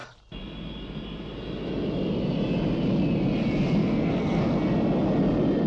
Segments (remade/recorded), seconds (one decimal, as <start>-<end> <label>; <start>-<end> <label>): 0.0-3.8 recorded; 3.8-4.6 remade; 4.6-5.7 recorded